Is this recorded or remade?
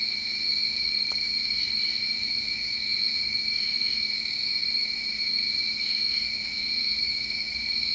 remade